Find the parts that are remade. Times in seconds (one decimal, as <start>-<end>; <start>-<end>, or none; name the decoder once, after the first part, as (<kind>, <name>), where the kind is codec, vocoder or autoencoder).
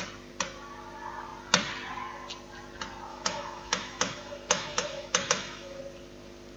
3.1-5.8 (autoencoder, DAC-VAE)